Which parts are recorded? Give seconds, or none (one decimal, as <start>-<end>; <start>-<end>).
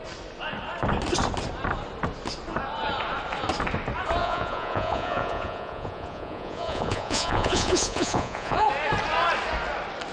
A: 0.0-4.2; 8.7-10.1